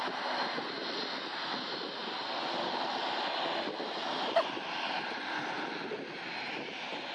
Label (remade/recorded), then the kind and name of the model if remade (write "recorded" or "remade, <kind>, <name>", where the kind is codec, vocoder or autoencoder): recorded